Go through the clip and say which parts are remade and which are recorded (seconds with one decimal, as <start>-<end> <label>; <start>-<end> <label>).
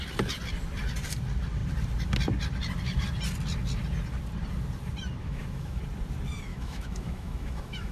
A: 0.0-5.2 recorded; 5.2-5.8 remade; 5.8-6.5 recorded; 6.5-7.9 remade